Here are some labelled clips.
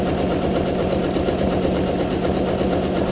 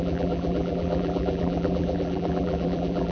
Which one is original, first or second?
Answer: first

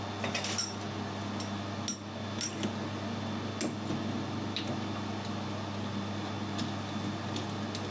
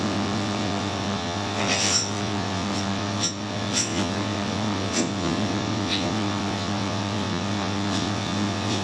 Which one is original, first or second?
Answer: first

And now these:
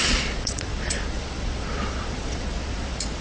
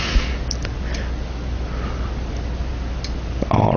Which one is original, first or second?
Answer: second